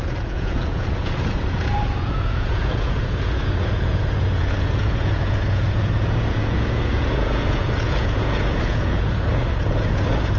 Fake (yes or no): yes